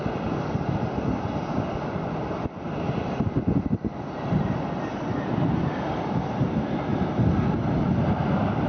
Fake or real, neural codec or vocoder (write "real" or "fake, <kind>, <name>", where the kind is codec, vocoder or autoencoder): real